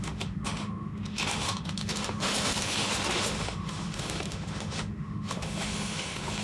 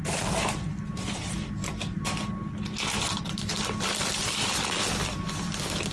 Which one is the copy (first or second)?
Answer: first